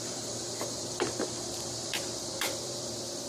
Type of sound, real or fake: fake